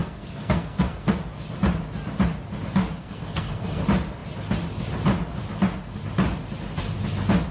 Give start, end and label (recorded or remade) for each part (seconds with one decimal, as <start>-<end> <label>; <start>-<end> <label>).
0.0-1.2 remade; 1.2-3.0 recorded; 3.0-3.8 remade; 3.8-7.5 recorded